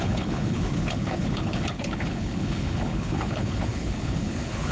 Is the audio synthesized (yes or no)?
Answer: yes